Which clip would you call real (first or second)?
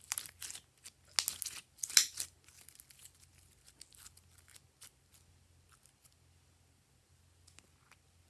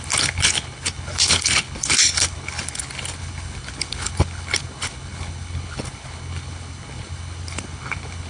first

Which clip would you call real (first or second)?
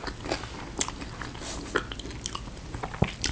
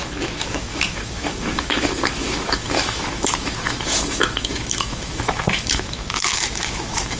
first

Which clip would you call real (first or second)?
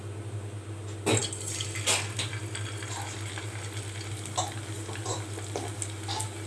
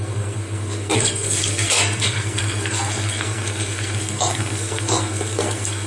first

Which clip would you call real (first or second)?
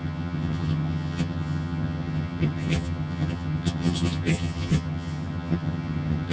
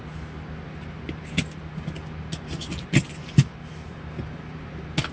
second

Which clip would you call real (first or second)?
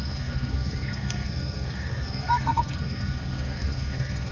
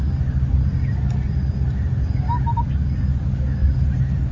second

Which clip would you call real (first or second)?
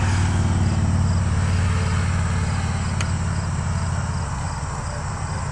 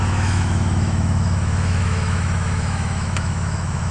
first